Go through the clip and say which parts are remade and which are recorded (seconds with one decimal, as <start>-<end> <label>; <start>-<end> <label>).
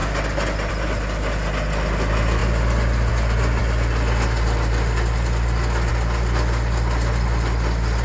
0.0-8.0 recorded